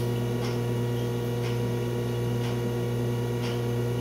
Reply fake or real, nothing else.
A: real